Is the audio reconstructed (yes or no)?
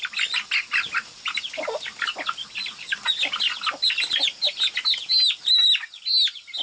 no